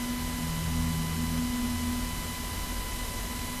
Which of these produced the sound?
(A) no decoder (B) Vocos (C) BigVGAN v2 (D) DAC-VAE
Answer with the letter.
A